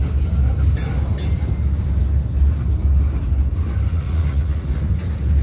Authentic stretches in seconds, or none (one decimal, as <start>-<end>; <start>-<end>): 0.0-3.9; 4.9-5.4